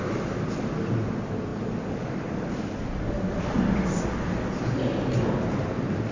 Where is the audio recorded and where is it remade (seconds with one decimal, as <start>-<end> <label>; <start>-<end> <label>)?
0.0-6.1 recorded